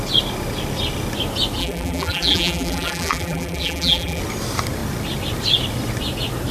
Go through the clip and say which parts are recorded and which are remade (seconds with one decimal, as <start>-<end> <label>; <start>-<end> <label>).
0.0-1.6 recorded; 1.6-4.2 remade; 4.2-6.5 recorded